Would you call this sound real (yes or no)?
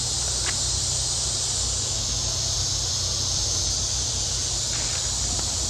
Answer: no